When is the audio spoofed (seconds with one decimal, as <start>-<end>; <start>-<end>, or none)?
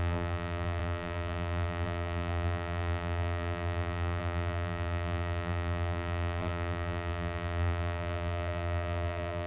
0.0-9.5